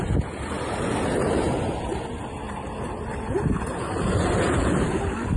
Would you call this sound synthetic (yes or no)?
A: yes